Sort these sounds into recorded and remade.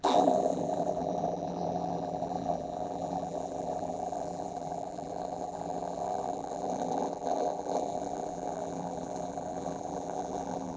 remade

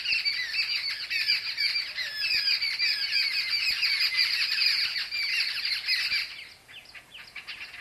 recorded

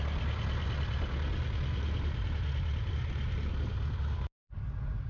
recorded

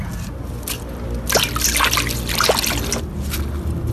recorded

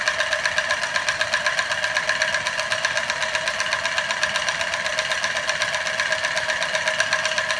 recorded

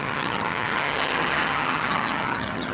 remade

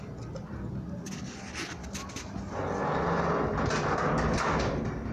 recorded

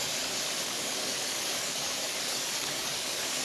remade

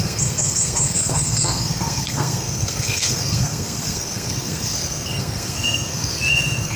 remade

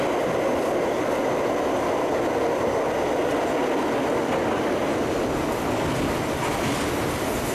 recorded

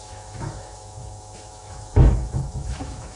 remade